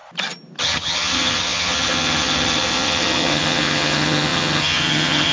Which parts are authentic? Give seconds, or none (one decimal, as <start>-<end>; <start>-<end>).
0.0-0.6